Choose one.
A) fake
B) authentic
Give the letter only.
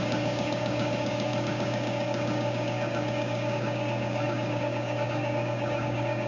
A